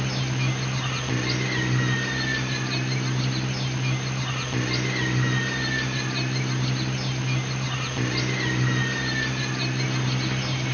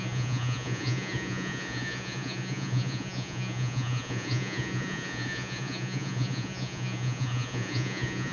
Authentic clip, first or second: first